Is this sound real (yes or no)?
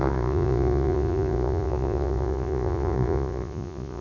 no